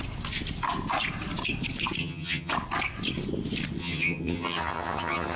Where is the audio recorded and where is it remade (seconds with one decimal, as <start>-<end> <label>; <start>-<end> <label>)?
0.0-2.0 recorded; 2.0-2.5 remade; 2.5-3.8 recorded; 3.8-5.4 remade

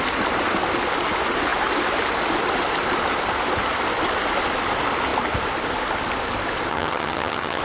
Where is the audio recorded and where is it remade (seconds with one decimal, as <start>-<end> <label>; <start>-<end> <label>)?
0.0-6.7 recorded; 6.7-7.6 remade

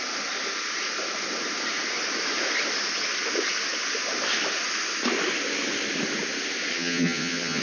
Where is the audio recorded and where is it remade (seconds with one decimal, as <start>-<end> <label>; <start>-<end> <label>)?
0.0-6.7 recorded; 6.7-7.6 remade

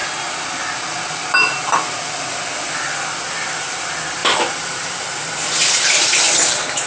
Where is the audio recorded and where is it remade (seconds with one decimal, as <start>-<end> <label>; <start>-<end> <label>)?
0.0-6.9 recorded